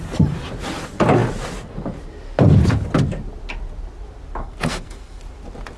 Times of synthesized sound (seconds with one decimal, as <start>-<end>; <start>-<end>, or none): 4.4-5.2